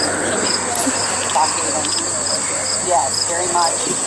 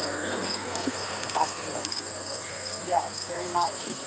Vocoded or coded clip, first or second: second